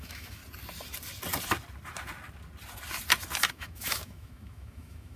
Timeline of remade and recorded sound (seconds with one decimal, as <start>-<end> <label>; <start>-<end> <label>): 0.0-0.4 remade; 0.4-3.5 recorded; 3.5-5.2 remade